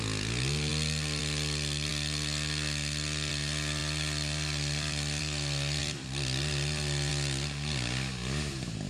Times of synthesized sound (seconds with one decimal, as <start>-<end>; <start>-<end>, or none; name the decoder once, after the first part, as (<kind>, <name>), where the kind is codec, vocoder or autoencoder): 3.8-5.2 (vocoder, BigVGAN v2); 5.8-7.1